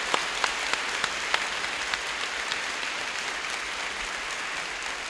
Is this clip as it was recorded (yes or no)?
yes